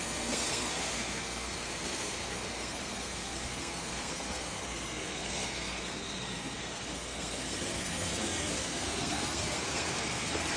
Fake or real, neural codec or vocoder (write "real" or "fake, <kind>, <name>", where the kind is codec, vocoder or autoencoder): fake, codec, SNAC